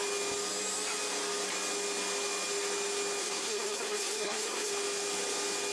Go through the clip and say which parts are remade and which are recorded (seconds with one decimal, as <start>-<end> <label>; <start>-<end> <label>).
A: 0.0-3.2 recorded; 3.2-4.7 remade; 4.7-5.7 recorded